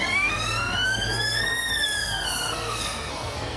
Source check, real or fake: fake